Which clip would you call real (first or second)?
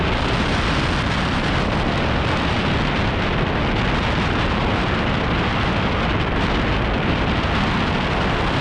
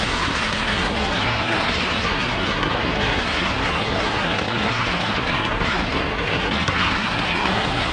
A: first